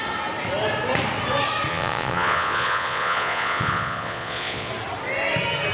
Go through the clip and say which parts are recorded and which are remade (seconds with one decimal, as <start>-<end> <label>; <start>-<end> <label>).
0.0-1.7 recorded; 1.7-4.7 remade; 4.7-5.7 recorded